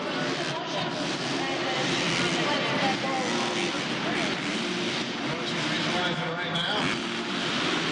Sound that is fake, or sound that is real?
real